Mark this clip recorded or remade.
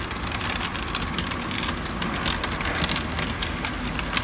recorded